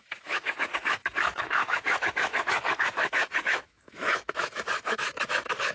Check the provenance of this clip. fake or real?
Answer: fake